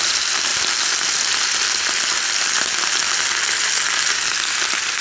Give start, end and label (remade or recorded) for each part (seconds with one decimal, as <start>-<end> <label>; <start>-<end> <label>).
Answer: 0.0-5.0 recorded